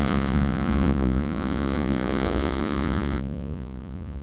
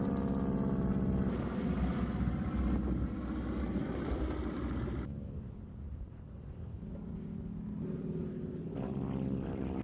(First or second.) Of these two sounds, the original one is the second